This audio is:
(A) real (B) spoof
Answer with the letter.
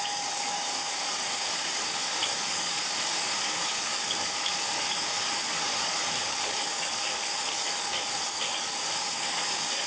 B